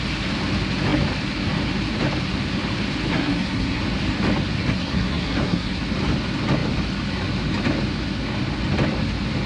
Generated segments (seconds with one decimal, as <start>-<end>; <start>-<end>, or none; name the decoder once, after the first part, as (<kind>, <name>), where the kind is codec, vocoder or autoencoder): 3.1-3.8 (codec, SNAC); 4.6-5.8